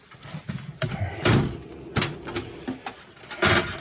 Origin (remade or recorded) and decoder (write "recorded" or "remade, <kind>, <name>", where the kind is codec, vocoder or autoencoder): recorded